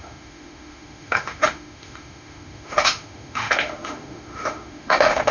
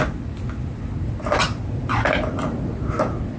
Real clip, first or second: second